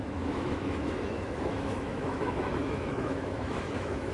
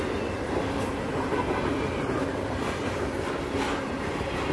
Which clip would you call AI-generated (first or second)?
first